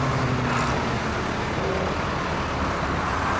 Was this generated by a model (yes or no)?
no